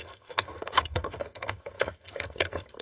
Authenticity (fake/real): fake